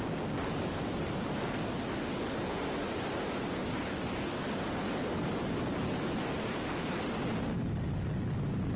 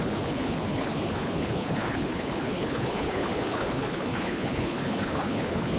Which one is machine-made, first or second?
second